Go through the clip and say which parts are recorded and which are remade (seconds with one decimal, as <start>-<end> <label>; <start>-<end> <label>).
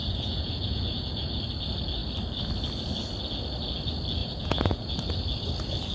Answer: 0.0-1.4 remade; 1.4-4.2 recorded; 4.2-4.9 remade; 4.9-5.9 recorded